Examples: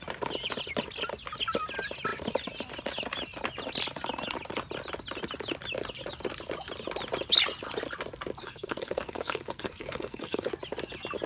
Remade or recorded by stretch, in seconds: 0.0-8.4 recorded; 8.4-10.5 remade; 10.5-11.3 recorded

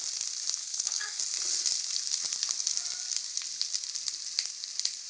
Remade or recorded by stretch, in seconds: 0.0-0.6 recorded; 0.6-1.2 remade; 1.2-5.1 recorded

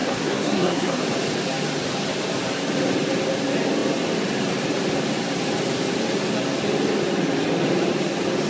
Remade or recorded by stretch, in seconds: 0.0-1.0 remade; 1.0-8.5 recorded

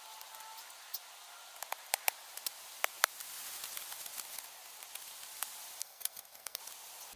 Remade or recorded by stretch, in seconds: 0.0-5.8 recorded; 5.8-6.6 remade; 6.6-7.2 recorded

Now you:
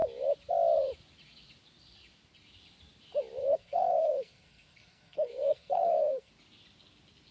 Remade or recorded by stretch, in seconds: 0.0-3.4 recorded; 3.4-6.3 remade; 6.3-7.3 recorded

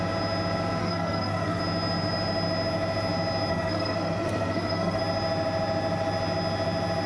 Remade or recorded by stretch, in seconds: 0.0-0.8 recorded; 0.8-1.6 remade; 1.6-3.5 recorded; 3.5-5.0 remade; 5.0-7.1 recorded